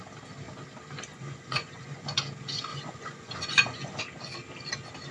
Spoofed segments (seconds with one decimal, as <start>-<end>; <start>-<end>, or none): 1.1-2.2; 2.7-4.0